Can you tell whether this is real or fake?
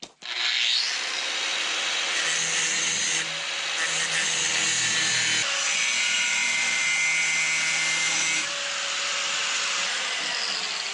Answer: real